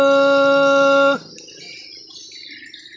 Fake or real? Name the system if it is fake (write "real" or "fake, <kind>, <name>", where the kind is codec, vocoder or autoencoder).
real